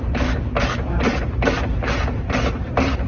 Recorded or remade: remade